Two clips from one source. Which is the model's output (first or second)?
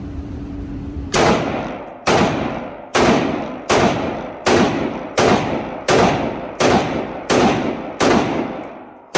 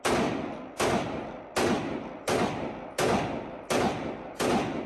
first